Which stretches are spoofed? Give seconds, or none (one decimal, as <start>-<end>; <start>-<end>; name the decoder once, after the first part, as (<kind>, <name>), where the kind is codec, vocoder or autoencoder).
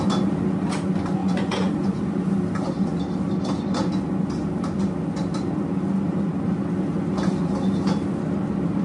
1.2-2.3 (vocoder, Vocos)